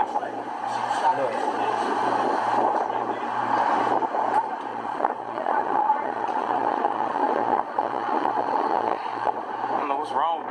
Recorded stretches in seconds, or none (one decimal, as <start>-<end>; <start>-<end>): 0.0-4.7; 9.5-10.5